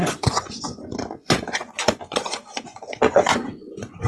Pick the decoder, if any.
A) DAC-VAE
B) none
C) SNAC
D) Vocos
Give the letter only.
D